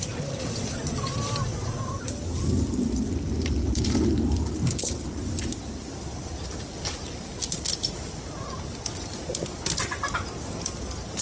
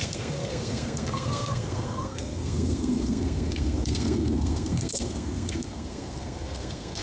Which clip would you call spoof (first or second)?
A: second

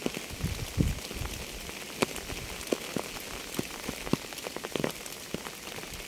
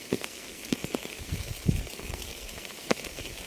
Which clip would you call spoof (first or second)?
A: second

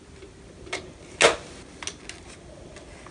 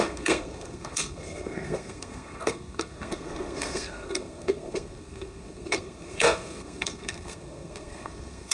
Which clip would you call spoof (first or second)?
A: second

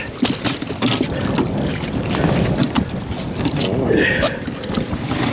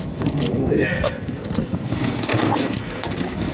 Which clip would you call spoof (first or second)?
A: second